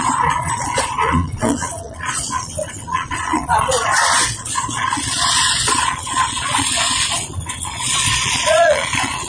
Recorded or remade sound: remade